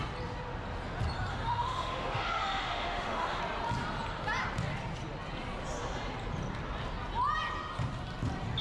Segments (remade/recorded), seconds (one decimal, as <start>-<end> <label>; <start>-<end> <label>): 0.0-1.3 recorded; 1.3-3.4 remade; 3.4-8.6 recorded